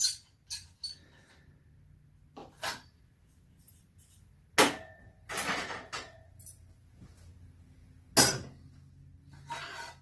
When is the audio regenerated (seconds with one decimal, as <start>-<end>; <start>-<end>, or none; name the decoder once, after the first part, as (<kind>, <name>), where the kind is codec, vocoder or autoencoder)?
none